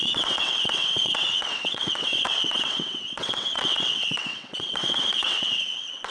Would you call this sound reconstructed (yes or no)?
yes